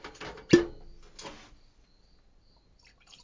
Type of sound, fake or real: real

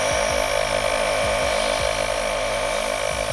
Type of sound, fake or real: real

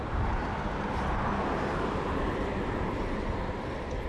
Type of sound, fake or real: real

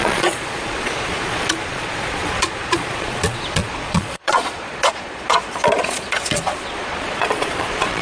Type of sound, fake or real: fake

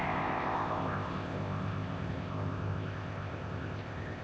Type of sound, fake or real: fake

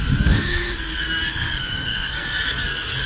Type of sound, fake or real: fake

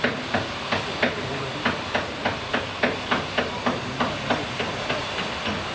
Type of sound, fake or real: real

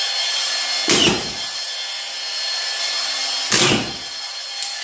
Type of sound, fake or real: real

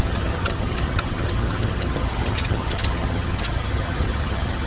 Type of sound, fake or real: fake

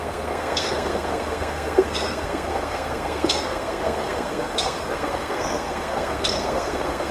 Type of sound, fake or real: fake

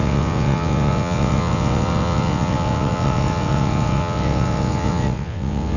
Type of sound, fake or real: fake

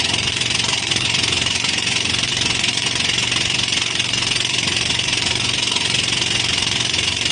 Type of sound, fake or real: fake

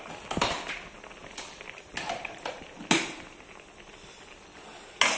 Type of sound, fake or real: real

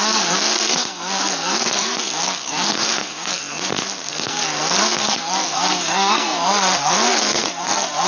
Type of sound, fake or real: fake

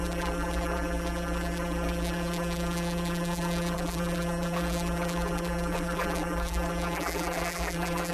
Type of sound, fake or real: fake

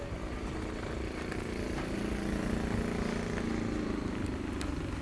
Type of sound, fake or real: real